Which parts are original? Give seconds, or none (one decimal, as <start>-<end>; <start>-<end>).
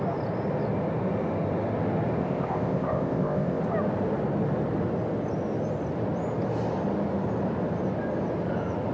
0.0-2.2; 3.6-8.9